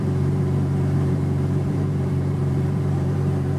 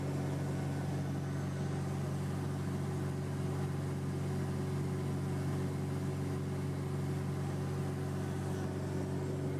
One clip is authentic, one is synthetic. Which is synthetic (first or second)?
first